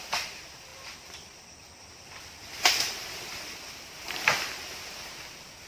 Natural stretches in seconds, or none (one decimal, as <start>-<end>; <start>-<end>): 0.0-0.7; 3.9-5.7